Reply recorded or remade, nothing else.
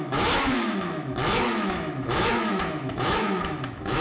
remade